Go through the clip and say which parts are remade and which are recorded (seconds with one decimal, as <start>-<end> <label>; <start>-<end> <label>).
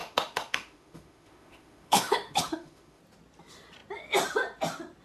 0.0-3.0 remade; 3.0-5.0 recorded